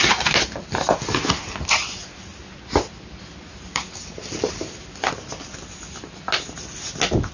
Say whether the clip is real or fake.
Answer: real